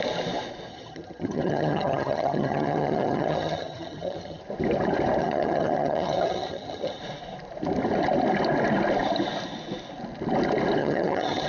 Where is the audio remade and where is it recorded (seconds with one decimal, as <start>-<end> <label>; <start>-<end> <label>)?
0.0-0.7 recorded; 0.7-4.4 remade; 4.4-5.2 recorded; 5.2-7.0 remade; 7.0-10.8 recorded; 10.8-11.5 remade